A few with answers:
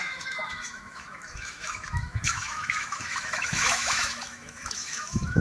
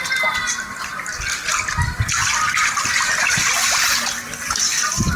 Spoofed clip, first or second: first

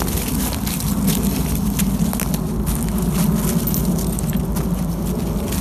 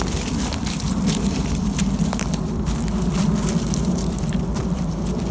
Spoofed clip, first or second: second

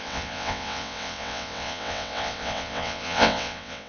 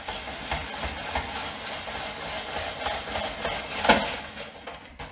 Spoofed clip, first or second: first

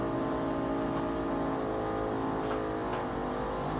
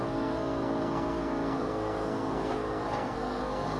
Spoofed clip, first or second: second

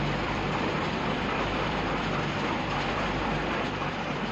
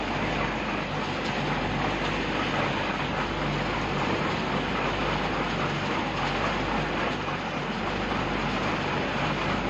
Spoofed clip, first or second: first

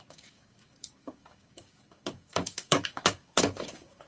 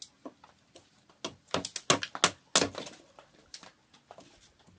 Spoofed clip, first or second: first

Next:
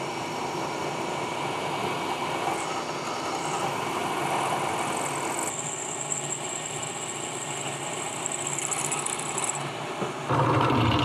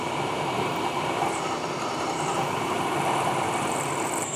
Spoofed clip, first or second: second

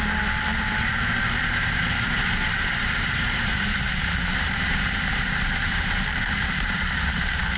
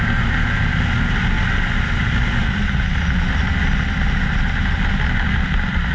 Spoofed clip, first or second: first